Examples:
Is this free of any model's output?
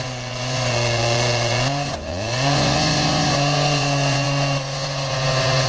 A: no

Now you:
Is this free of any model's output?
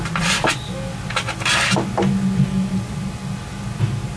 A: yes